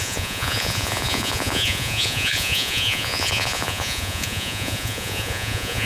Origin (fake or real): fake